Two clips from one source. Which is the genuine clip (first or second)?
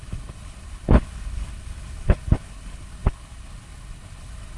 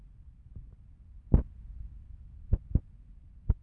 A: second